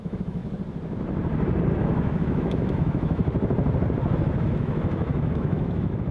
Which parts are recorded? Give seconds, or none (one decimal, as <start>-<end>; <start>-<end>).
0.4-1.8; 3.2-4.4